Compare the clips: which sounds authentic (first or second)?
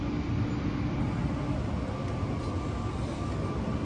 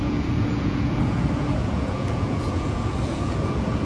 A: first